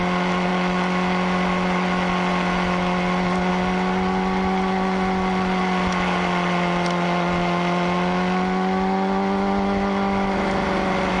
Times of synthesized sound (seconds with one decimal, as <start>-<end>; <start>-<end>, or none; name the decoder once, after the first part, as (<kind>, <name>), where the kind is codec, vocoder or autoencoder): none

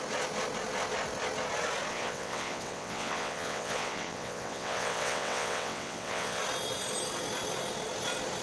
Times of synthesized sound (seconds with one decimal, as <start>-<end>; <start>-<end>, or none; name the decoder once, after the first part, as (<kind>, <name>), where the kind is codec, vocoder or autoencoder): 1.9-6.4 (vocoder, WaveNeXt)

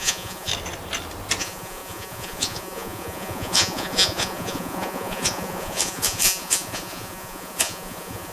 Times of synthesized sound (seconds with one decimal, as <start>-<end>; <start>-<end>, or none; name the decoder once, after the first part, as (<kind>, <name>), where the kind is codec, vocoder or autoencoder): 0.0-0.5 (vocoder, Vocos); 1.4-8.3

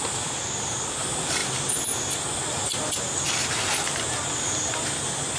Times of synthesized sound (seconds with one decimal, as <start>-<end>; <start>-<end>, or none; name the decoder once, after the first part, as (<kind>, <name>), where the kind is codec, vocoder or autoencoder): none

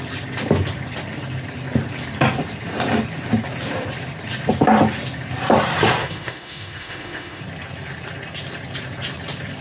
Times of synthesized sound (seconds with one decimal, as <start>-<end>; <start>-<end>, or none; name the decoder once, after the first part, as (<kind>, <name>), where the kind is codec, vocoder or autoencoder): 6.0-7.4 (autoencoder, DAC-VAE)

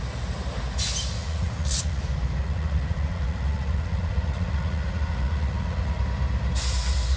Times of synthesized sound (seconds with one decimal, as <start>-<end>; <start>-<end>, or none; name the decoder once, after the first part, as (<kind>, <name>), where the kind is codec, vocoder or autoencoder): 1.2-2.0 (vocoder, Vocos); 2.4-6.0

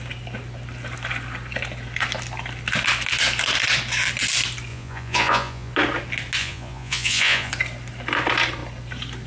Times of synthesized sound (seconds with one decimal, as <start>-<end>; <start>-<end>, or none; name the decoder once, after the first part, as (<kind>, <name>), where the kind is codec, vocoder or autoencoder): 4.7-5.7 (vocoder, Vocos); 6.4-7.5